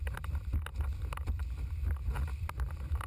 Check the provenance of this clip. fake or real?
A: fake